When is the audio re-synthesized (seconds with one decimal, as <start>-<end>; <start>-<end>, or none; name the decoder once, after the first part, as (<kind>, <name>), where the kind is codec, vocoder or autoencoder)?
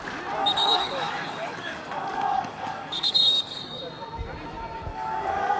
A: 0.4-3.8 (codec, DAC); 4.9-5.6